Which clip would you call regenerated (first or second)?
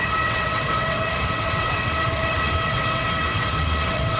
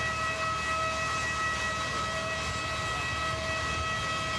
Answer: first